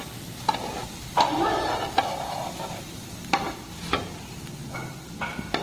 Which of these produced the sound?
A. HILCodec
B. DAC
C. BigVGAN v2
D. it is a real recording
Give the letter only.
D